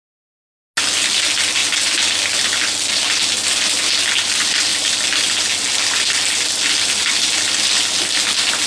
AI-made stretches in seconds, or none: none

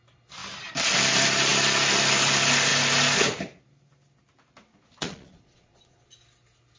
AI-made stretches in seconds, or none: 4.7-6.1 (vocoder, Vocos)

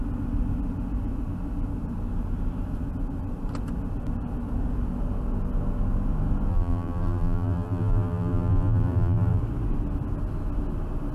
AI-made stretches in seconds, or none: 6.5-9.4 (vocoder, BigVGAN v2)

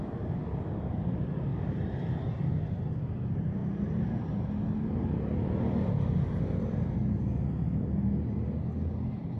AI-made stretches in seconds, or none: 1.5-2.5 (vocoder, BigVGAN v2)

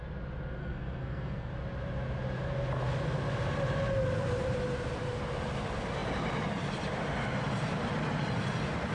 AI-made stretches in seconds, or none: 0.6-1.5 (codec, SNAC)

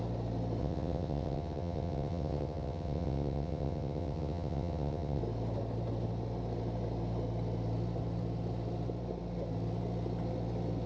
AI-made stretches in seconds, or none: 0.6-5.2 (vocoder, WaveNeXt)

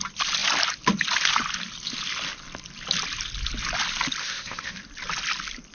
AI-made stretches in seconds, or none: 4.2-4.8 (codec, ZipCodec)

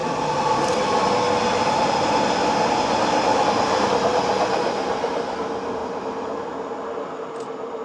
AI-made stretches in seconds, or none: none